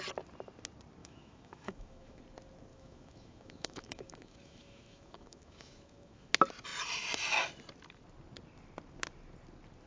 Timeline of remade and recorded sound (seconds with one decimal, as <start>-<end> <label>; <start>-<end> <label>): 0.0-1.0 recorded; 1.0-2.2 remade; 2.2-2.7 recorded; 2.7-6.3 remade; 6.3-9.9 recorded